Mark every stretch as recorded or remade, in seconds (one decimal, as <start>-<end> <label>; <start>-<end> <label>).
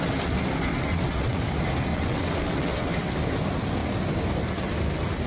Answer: 0.0-0.7 recorded; 0.7-1.4 remade; 1.4-1.9 recorded; 1.9-3.1 remade; 3.1-5.3 recorded